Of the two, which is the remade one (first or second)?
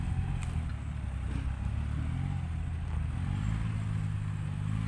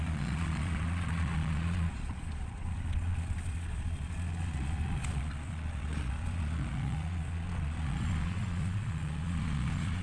second